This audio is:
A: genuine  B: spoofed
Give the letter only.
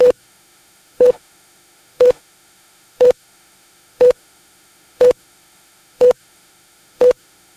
B